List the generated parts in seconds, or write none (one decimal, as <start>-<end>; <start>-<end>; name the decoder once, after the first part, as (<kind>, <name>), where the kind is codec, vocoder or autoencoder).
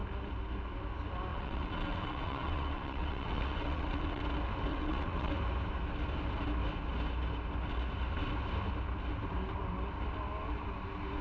1.3-4.2 (vocoder, WaveNeXt); 4.7-5.3